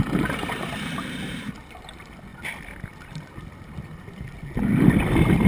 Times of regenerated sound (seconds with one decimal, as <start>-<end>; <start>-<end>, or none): 0.0-5.5